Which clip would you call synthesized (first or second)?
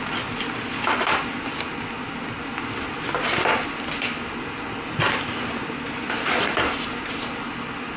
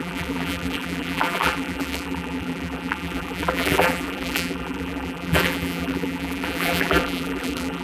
second